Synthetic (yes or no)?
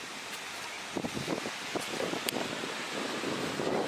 no